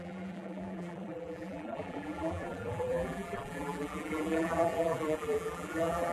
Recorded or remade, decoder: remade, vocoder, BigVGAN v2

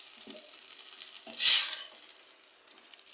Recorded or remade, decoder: recorded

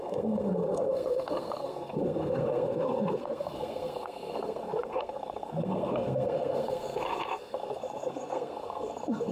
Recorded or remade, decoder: remade, codec, SNAC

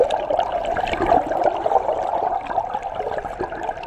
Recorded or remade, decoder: remade, vocoder, BigVGAN v2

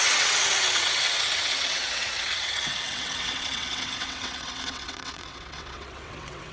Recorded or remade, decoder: remade, vocoder, WaveNeXt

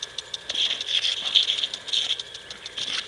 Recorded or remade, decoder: recorded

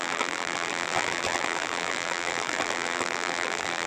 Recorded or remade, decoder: remade, vocoder, BigVGAN v2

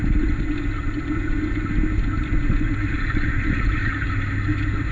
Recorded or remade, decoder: recorded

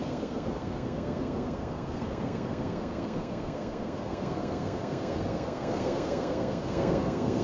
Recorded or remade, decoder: remade, codec, SNAC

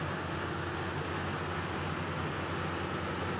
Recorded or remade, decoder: recorded